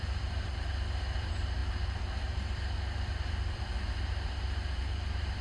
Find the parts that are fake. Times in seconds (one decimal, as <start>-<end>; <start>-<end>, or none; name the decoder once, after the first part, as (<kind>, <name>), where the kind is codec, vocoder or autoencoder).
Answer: 0.0-3.7 (vocoder, BigVGAN v2); 4.4-5.4